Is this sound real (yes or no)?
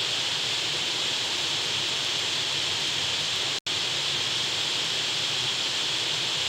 yes